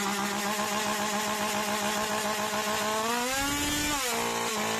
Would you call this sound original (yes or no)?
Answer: yes